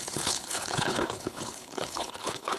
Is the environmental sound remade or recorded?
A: remade